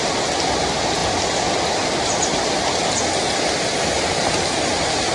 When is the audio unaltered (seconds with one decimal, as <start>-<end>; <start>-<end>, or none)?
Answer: 0.0-5.1